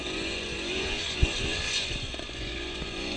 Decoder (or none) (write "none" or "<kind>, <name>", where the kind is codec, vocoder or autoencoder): vocoder, Vocos